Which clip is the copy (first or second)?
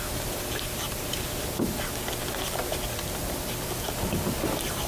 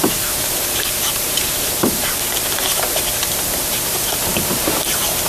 second